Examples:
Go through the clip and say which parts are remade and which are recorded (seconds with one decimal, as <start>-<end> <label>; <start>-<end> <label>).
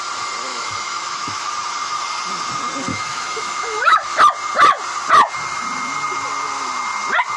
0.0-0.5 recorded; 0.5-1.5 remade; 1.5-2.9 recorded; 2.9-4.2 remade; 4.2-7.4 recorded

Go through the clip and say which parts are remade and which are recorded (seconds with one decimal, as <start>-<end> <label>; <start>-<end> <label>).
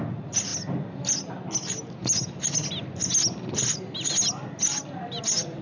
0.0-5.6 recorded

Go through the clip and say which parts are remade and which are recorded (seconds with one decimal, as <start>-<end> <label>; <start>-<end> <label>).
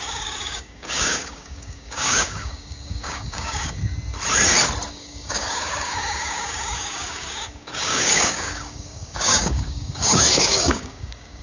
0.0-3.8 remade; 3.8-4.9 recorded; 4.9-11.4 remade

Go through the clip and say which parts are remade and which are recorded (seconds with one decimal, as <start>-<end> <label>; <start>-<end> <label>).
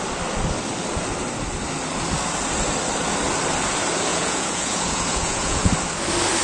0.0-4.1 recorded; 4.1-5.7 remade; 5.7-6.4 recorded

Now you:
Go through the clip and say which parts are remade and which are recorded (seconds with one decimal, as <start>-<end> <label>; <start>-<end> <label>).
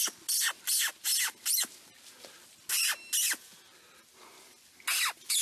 0.0-5.4 recorded